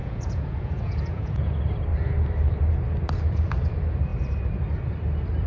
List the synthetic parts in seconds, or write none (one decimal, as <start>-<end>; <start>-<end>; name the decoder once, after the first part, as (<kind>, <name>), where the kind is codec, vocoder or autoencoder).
0.0-1.5 (vocoder, Vocos)